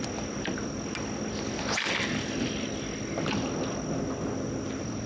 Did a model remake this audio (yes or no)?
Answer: no